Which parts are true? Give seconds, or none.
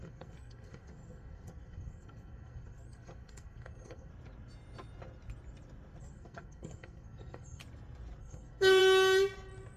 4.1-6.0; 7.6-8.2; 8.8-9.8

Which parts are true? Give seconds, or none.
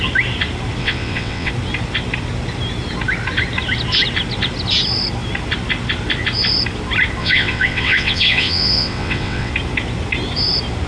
0.0-0.8; 1.5-7.2; 9.5-10.9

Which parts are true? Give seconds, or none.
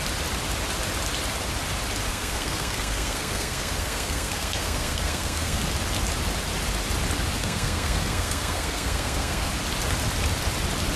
0.0-2.1; 5.6-7.4; 9.5-11.0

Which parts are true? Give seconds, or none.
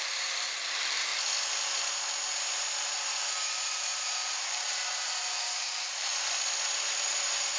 1.1-2.8; 6.1-6.9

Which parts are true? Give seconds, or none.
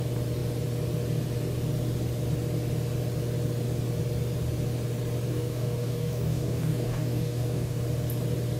0.0-5.3; 7.8-8.6